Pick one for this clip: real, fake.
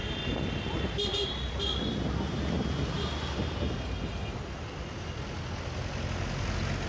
real